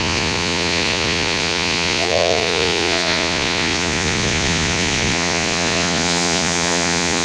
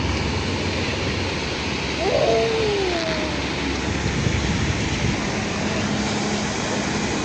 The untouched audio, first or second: second